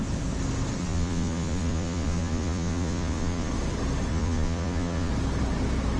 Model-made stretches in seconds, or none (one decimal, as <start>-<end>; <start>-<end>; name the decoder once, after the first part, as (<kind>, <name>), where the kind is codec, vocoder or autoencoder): 0.8-3.5 (vocoder, Vocos); 4.1-5.1